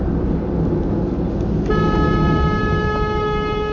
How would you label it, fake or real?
real